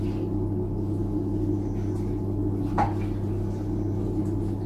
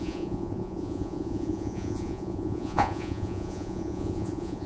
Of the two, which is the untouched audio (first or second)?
first